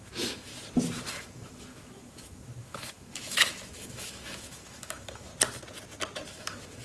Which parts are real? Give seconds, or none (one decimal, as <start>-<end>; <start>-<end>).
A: 0.5-1.1; 5.3-6.3